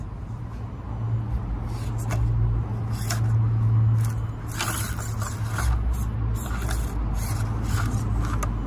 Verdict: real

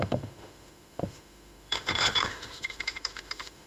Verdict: fake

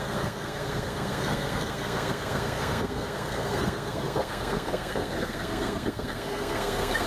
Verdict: fake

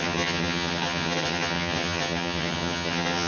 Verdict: fake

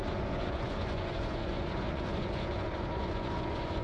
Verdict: fake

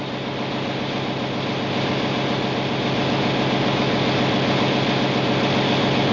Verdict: real